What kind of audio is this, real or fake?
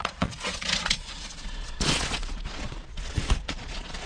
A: fake